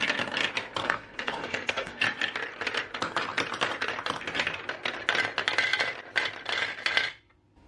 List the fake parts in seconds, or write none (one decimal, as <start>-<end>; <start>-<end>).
0.8-2.0